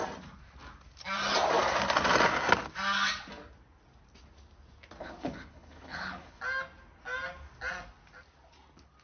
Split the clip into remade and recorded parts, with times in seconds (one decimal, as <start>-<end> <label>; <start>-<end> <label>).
0.0-5.0 recorded; 5.0-6.4 remade; 6.4-9.0 recorded